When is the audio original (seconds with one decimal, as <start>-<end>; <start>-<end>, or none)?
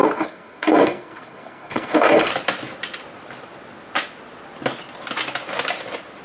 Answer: 2.3-6.2